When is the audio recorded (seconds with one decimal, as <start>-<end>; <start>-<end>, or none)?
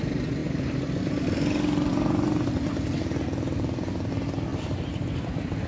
0.0-5.7